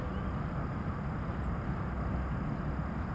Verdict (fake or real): real